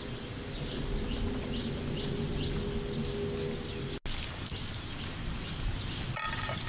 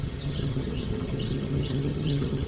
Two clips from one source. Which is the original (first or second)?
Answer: first